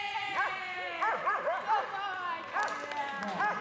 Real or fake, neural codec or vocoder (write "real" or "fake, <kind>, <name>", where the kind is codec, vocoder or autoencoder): real